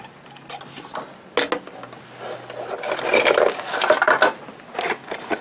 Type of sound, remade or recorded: recorded